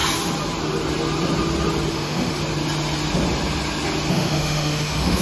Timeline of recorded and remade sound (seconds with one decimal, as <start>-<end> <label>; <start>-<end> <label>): 0.0-1.9 recorded; 1.9-2.4 remade; 2.4-4.1 recorded; 4.1-5.2 remade